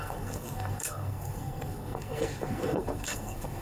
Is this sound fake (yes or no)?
yes